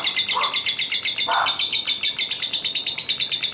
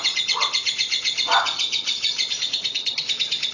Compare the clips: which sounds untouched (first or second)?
first